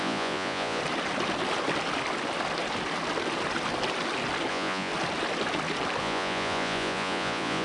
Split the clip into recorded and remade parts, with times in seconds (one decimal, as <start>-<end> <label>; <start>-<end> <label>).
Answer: 0.0-0.8 remade; 0.8-4.5 recorded; 4.5-4.9 remade; 4.9-6.0 recorded; 6.0-7.6 remade